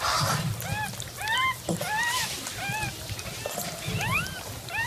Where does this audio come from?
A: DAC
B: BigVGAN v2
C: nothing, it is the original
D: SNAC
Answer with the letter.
C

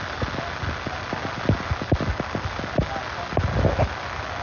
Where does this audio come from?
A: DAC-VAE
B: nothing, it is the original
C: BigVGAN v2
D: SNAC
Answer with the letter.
B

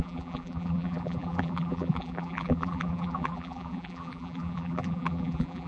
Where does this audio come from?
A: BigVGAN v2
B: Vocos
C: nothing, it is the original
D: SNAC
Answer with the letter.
A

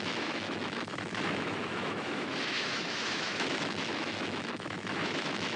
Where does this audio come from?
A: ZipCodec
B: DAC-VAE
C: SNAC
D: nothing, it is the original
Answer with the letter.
B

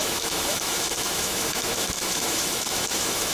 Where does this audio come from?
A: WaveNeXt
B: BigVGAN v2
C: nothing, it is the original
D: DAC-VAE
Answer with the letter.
D